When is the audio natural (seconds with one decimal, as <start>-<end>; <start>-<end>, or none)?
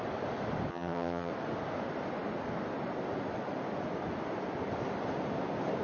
0.0-0.7; 1.3-5.8